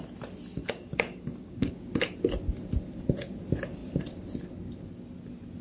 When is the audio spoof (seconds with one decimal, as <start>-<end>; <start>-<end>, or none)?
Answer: 0.6-1.7